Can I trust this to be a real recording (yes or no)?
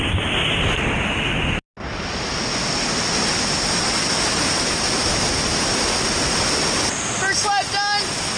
yes